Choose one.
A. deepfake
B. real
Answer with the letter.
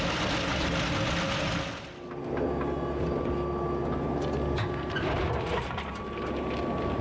B